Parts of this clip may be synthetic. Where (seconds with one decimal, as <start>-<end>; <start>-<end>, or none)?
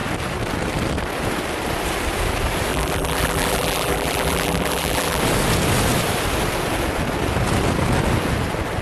2.7-5.2